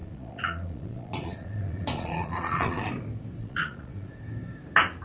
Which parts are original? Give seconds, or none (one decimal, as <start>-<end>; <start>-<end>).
2.9-3.4; 4.1-5.0